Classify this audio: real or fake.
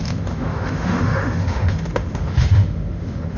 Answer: fake